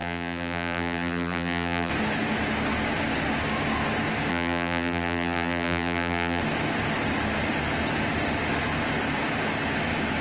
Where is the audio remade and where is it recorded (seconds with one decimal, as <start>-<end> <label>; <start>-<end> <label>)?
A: 0.0-1.9 remade; 1.9-4.3 recorded; 4.3-6.4 remade; 6.4-10.2 recorded